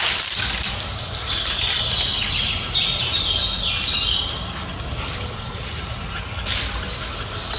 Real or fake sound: real